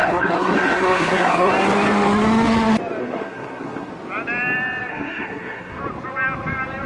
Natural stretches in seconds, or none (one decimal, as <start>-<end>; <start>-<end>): 1.5-3.0; 3.9-4.9; 5.8-6.9